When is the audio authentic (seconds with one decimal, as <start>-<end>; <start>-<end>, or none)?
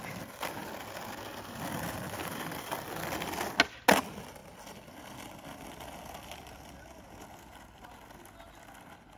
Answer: 0.0-9.2